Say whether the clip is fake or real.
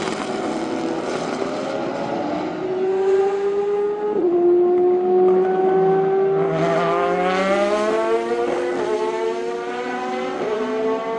real